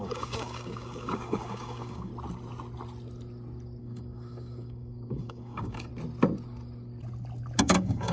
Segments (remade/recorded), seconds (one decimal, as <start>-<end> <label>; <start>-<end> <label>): 0.0-2.1 remade; 2.1-3.8 recorded; 3.8-5.9 remade; 5.9-7.6 recorded; 7.6-8.1 remade